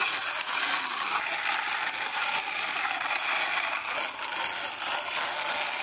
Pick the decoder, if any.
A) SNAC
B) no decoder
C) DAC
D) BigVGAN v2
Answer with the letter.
B